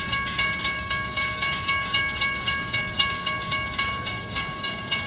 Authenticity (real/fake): fake